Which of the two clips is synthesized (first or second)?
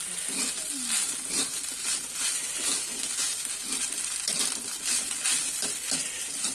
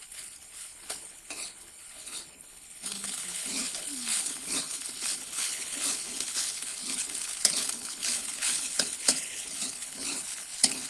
second